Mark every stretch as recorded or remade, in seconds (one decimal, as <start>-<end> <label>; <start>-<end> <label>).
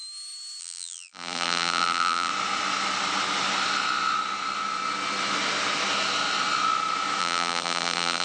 0.0-0.6 recorded; 0.6-2.3 remade; 2.3-7.2 recorded; 7.2-8.2 remade